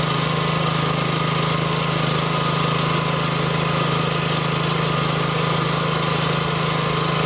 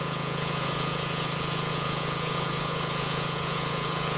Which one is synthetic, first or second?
second